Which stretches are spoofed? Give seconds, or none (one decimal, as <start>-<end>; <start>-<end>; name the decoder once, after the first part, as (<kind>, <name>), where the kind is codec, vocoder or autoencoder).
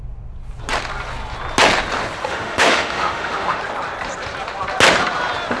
2.3-3.6 (autoencoder, DAC-VAE)